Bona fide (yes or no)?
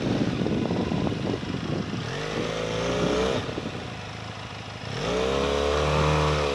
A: yes